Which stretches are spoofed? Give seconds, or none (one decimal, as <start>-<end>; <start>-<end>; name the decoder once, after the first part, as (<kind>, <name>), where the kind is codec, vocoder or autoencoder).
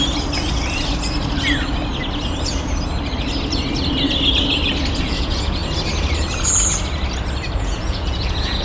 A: 5.0-5.6 (vocoder, Vocos); 7.6-8.6